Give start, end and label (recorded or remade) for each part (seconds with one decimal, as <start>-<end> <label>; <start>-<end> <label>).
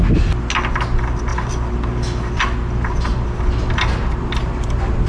0.0-5.1 recorded